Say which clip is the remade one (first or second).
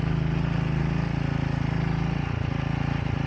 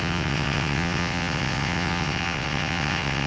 second